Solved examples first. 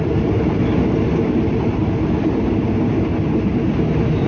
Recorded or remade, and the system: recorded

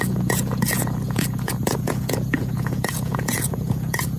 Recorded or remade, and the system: remade, vocoder, Vocos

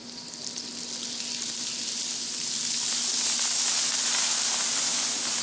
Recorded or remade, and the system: recorded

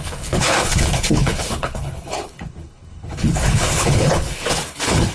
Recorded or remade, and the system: remade, codec, HILCodec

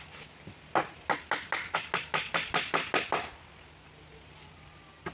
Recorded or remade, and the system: recorded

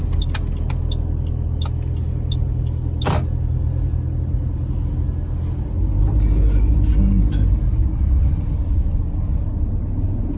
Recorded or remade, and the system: recorded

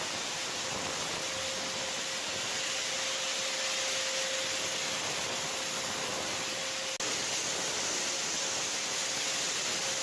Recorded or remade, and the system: recorded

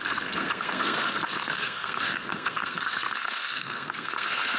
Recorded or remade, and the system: remade, codec, SNAC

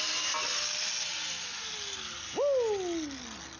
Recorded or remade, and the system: recorded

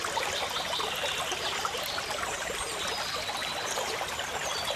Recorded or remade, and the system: recorded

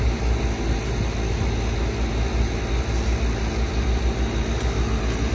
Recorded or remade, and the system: recorded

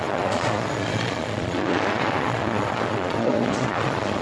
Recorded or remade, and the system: remade, vocoder, Vocos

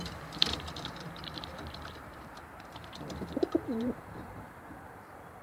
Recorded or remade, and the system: remade, vocoder, BigVGAN v2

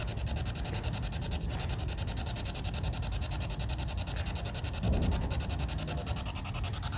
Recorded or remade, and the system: recorded